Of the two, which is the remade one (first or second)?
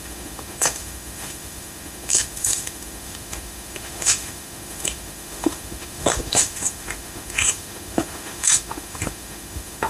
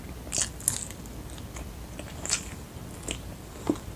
first